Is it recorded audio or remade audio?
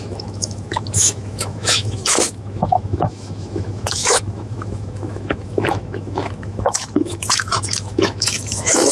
remade